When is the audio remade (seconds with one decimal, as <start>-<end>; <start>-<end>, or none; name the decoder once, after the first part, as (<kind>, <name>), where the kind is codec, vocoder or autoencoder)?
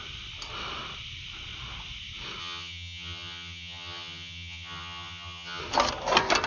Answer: 2.4-5.6 (vocoder, HiFi-GAN)